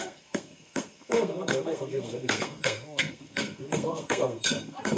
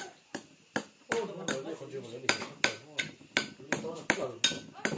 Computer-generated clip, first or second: first